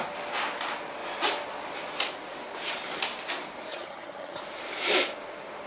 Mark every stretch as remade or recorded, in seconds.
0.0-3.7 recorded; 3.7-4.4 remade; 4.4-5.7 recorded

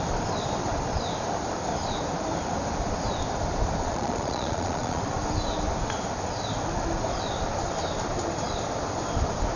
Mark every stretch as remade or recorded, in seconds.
0.0-3.8 recorded; 3.8-5.0 remade; 5.0-9.6 recorded

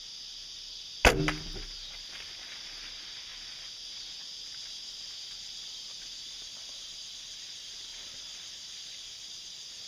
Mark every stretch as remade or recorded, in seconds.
0.0-9.9 recorded

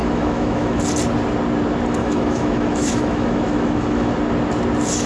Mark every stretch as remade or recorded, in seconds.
0.0-0.8 remade; 0.8-2.0 recorded; 2.0-4.1 remade; 4.1-5.1 recorded